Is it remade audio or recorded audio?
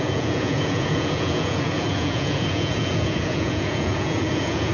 remade